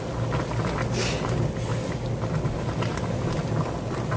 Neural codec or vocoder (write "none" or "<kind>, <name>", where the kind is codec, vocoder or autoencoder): none